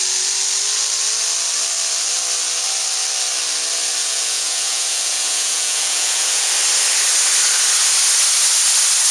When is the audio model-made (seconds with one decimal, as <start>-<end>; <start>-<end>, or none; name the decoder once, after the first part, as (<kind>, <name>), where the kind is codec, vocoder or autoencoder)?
4.0-6.5 (vocoder, Vocos)